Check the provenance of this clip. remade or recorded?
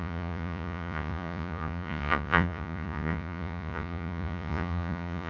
remade